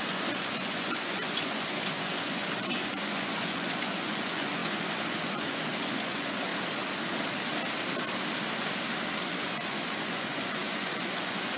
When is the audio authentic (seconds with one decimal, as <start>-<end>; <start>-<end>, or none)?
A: 6.5-9.2